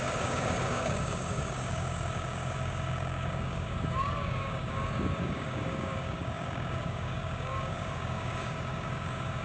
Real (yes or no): no